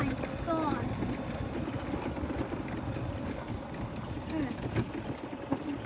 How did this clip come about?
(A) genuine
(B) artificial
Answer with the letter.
A